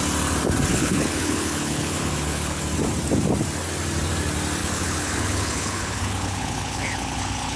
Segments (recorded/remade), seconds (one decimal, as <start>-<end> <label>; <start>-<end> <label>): 0.0-0.7 recorded; 0.7-2.6 remade; 2.6-4.6 recorded; 4.6-7.6 remade